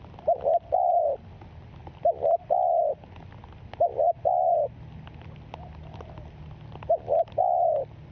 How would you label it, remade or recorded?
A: recorded